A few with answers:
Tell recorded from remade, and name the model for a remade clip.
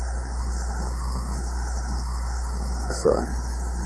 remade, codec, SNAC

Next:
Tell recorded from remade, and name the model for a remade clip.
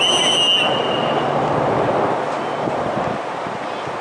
recorded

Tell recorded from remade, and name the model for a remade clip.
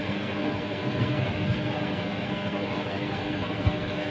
remade, codec, SNAC